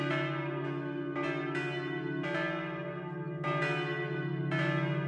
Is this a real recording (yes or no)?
yes